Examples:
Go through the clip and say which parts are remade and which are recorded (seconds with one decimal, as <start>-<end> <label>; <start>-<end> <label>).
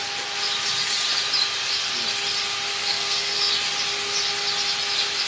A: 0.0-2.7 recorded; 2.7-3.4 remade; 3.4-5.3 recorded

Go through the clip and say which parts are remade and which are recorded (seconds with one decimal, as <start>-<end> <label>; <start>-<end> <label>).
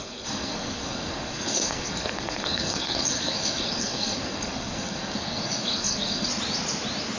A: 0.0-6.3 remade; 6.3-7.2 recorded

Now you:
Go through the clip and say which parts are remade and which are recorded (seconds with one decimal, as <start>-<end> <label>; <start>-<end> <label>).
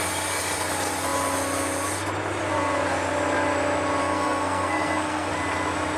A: 0.0-4.0 recorded; 4.0-5.3 remade; 5.3-6.0 recorded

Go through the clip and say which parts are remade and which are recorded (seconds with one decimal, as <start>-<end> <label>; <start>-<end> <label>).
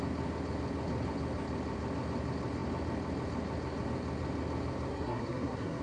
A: 0.0-4.9 recorded; 4.9-5.8 remade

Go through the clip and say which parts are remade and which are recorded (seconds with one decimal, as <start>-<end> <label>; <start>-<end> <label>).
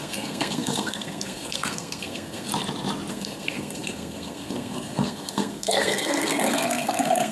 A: 0.0-2.5 remade; 2.5-3.1 recorded; 3.1-7.3 remade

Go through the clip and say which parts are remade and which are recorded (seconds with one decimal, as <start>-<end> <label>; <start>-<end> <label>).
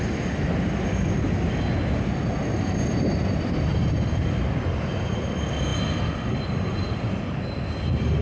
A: 0.0-8.2 recorded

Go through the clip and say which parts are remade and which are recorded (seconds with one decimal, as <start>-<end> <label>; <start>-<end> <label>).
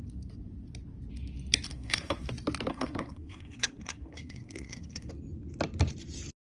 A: 0.0-1.7 recorded; 1.7-2.3 remade; 2.3-2.7 recorded; 2.7-5.1 remade; 5.1-6.4 recorded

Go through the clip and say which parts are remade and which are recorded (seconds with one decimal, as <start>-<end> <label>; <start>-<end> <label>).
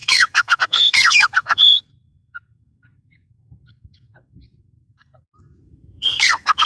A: 0.0-6.7 remade